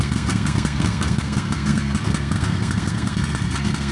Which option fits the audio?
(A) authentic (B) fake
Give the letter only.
B